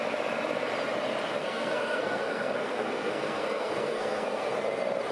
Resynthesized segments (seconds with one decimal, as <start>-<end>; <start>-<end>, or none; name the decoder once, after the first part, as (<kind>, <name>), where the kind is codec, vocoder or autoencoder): 1.4-4.5 (codec, SNAC)